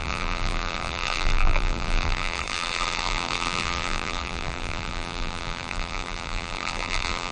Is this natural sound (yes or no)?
no